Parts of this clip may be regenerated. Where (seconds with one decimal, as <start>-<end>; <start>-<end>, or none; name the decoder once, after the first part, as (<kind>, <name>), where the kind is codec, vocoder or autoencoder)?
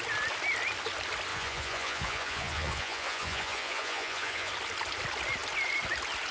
1.3-4.5 (vocoder, Vocos)